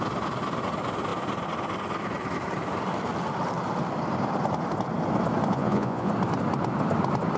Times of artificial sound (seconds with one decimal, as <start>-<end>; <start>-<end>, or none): 5.5-6.1